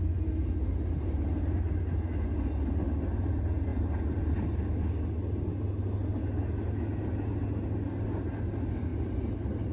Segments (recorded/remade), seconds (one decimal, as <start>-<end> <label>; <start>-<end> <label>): 0.0-9.7 recorded